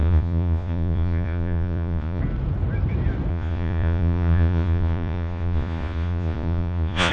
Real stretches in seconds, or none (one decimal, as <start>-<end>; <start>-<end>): 2.2-3.3